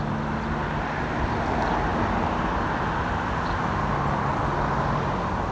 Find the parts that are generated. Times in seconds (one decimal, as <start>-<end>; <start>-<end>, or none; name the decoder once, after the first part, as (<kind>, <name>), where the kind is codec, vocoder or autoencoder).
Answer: none